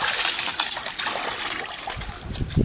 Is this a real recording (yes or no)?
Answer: yes